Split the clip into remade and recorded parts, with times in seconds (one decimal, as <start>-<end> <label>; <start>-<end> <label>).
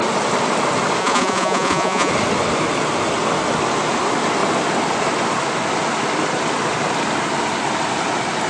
0.0-1.0 recorded; 1.0-2.1 remade; 2.1-8.5 recorded